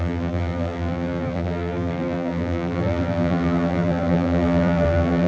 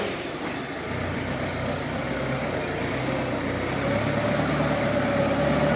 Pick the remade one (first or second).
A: first